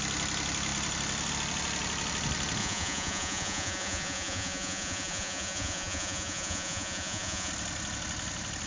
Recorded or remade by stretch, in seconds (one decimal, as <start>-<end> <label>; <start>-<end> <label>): 0.0-2.6 recorded; 2.6-7.5 remade; 7.5-8.7 recorded